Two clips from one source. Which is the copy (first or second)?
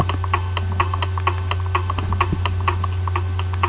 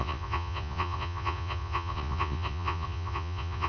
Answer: second